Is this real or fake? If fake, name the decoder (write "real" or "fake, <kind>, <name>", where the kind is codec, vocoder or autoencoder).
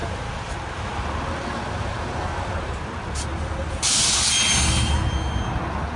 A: real